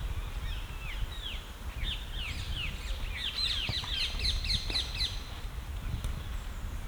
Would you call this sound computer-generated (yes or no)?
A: no